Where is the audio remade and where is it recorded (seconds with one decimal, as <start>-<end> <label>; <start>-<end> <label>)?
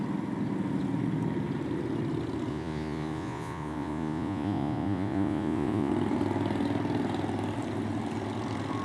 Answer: 0.0-2.5 recorded; 2.5-5.9 remade; 5.9-8.8 recorded